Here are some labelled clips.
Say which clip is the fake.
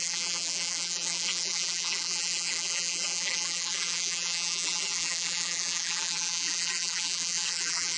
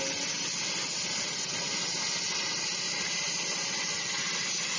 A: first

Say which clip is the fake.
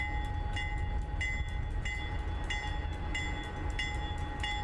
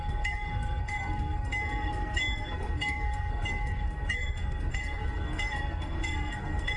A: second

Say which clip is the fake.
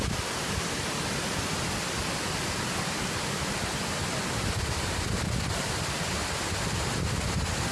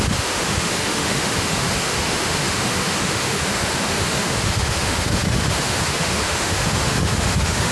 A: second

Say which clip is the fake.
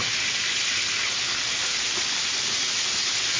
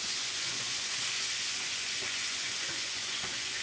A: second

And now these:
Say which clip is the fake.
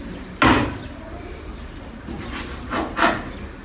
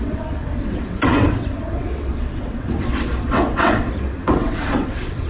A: second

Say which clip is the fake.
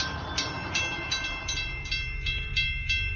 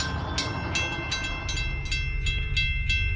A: first